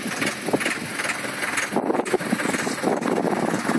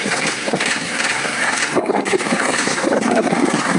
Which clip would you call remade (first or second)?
second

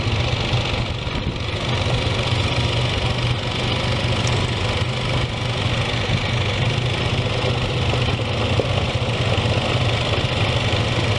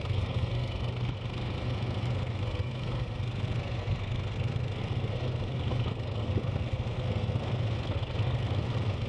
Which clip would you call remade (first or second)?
second